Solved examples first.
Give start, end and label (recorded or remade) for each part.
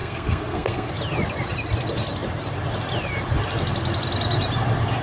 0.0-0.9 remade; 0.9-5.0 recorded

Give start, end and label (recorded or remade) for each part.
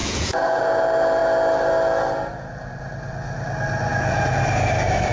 0.0-0.6 remade; 0.6-3.9 recorded; 3.9-4.4 remade; 4.4-5.1 recorded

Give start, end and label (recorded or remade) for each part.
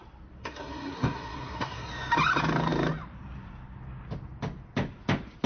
0.0-0.4 recorded; 0.4-1.9 remade; 1.9-5.5 recorded